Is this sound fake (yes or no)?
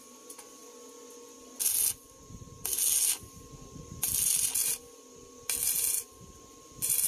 no